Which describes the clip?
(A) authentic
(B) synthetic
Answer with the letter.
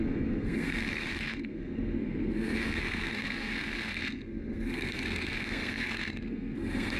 B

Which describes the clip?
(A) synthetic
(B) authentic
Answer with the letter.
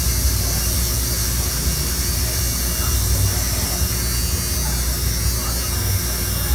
B